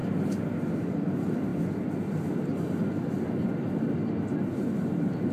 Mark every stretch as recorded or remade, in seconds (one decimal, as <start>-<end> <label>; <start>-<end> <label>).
0.0-5.3 recorded